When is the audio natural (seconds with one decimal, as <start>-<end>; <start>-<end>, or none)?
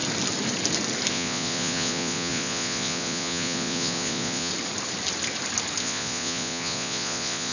0.0-1.1; 4.5-5.8